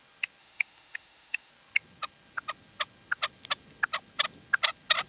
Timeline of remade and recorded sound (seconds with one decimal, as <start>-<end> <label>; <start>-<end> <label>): 0.0-0.4 recorded; 0.4-1.5 remade; 1.5-5.1 recorded